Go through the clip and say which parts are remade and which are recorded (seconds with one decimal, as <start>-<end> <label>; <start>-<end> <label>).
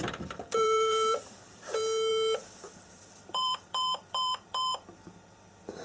0.0-5.8 remade